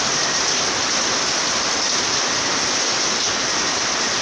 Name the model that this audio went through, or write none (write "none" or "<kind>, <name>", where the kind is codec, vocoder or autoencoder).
none